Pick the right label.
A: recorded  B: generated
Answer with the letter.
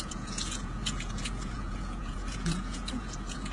B